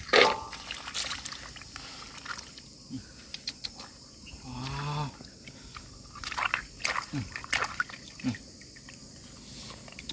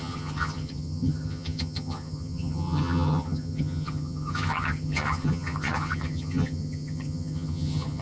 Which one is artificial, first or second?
second